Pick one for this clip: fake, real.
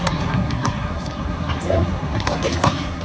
fake